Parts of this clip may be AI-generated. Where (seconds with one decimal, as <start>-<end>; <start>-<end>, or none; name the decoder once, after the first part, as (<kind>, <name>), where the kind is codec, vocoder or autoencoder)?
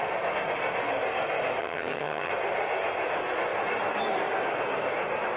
1.6-2.3 (vocoder, HiFi-GAN)